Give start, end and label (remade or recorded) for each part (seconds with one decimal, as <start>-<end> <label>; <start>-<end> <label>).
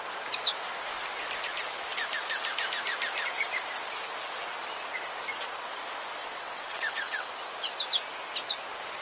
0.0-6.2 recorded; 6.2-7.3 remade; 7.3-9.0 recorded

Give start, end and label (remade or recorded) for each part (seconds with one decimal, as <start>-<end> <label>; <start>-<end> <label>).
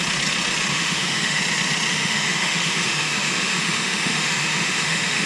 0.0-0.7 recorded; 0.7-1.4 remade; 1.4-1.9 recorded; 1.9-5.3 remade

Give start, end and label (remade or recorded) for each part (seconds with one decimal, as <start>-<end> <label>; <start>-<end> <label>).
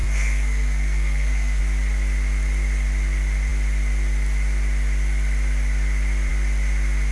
0.0-1.6 remade; 1.6-7.1 recorded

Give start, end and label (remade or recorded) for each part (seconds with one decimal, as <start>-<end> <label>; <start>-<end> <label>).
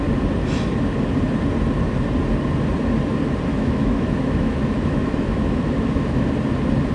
0.0-3.5 recorded; 3.5-6.3 remade; 6.3-6.9 recorded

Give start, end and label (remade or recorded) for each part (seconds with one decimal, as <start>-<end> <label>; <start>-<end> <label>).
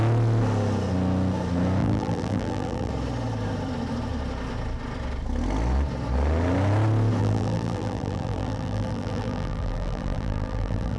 0.0-1.8 recorded; 1.8-2.9 remade; 2.9-7.2 recorded; 7.2-11.0 remade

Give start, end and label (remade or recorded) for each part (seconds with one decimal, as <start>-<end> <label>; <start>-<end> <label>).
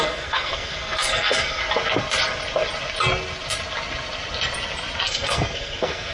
0.0-1.6 remade; 1.6-5.1 recorded; 5.1-6.1 remade